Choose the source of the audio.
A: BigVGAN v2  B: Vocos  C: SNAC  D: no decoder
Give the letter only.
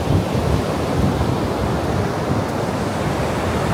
D